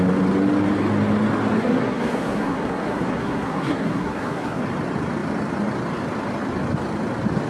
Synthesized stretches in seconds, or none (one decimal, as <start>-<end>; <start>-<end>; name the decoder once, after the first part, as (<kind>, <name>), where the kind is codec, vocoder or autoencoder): 1.6-4.6 (codec, SNAC)